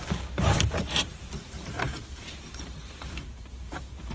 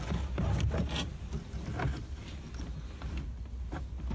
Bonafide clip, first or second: second